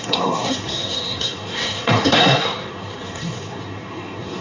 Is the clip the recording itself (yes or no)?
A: no